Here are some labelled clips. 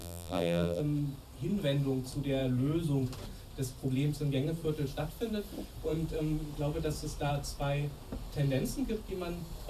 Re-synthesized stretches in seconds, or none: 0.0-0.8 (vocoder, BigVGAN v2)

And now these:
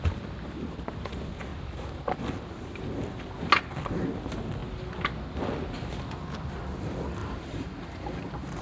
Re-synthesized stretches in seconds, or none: 7.2-8.6 (vocoder, BigVGAN v2)

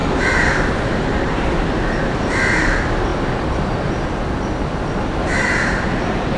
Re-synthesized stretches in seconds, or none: 0.9-1.6 (vocoder, BigVGAN v2)

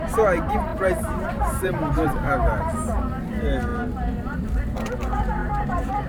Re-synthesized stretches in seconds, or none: 0.7-2.1 (vocoder, BigVGAN v2)